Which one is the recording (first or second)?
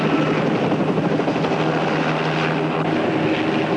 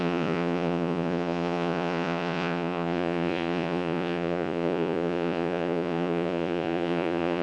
first